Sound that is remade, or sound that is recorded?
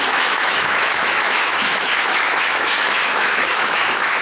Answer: remade